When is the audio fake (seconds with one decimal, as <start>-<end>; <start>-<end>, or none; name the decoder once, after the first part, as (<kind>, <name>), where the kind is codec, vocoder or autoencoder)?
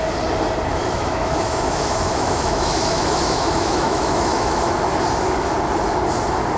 0.7-4.7 (autoencoder, DAC-VAE)